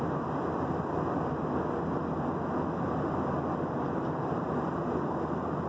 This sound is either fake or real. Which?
real